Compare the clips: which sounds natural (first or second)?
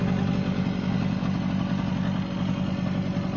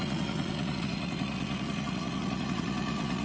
first